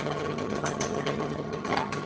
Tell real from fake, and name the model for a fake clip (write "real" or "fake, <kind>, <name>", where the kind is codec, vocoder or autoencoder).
fake, vocoder, HiFi-GAN